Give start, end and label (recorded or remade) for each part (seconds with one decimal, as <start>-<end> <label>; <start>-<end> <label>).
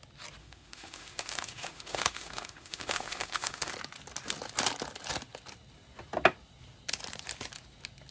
0.0-0.4 recorded; 0.4-3.7 remade; 3.7-8.1 recorded